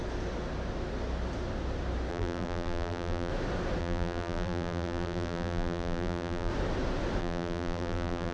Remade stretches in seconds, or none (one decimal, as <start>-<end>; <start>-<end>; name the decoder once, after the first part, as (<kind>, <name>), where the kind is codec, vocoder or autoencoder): 2.1-3.3 (vocoder, BigVGAN v2); 3.8-6.5; 7.2-8.3